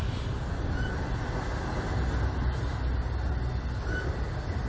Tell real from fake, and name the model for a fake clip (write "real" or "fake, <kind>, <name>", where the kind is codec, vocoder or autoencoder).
real